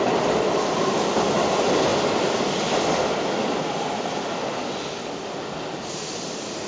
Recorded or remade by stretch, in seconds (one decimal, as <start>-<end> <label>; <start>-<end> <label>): 0.0-6.7 recorded